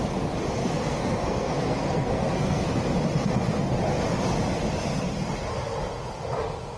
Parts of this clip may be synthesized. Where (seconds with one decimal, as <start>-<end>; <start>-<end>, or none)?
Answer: 0.6-2.7